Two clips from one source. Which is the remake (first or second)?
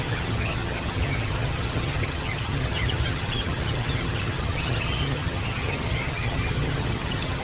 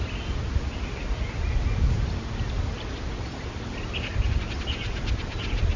first